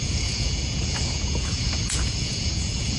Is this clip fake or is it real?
fake